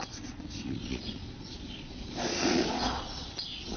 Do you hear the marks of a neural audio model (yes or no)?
yes